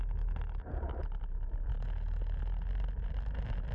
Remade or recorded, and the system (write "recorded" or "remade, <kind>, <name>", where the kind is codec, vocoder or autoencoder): recorded